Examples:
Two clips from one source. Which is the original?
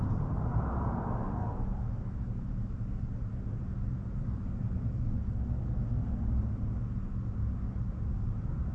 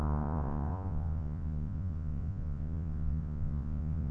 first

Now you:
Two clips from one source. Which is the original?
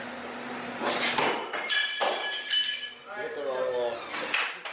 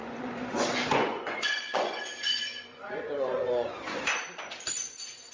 first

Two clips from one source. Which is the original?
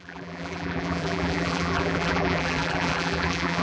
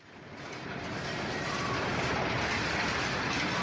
second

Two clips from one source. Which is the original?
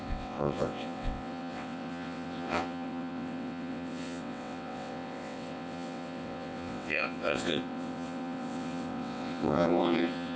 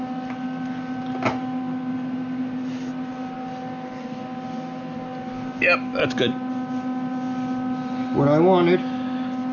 second